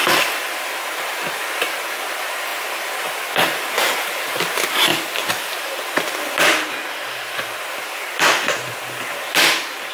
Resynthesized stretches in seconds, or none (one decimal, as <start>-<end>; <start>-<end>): 4.9-6.2